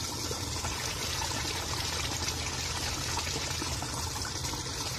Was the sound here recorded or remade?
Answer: recorded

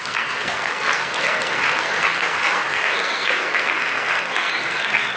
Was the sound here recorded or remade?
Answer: remade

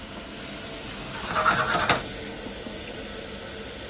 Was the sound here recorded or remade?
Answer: recorded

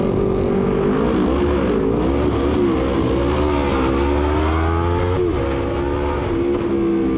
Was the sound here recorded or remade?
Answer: recorded